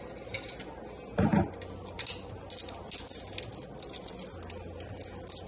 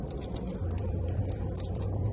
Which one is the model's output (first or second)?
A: second